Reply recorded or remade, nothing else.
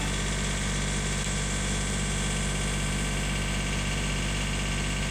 recorded